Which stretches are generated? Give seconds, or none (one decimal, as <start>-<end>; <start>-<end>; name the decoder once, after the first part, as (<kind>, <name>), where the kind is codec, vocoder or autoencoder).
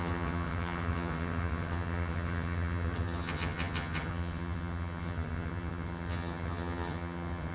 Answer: 0.0-7.5 (vocoder, HiFi-GAN)